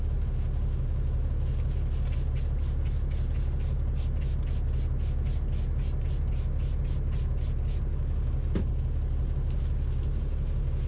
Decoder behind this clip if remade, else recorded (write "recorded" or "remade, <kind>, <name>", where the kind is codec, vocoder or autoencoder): recorded